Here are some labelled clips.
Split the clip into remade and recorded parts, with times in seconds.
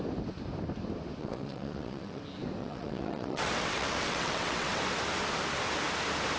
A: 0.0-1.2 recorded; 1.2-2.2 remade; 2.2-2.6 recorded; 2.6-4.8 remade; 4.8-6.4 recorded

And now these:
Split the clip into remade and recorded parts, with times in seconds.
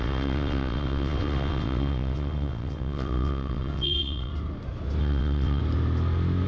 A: 0.0-4.3 remade; 4.3-5.0 recorded; 5.0-5.6 remade; 5.6-6.5 recorded